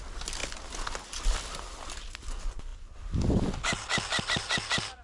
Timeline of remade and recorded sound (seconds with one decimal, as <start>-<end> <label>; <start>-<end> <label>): 0.0-5.0 recorded